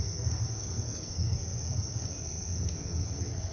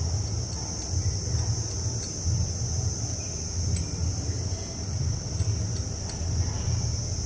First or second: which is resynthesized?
first